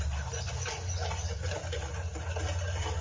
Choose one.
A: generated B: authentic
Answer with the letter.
B